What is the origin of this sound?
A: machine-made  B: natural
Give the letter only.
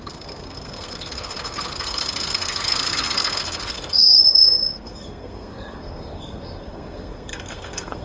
A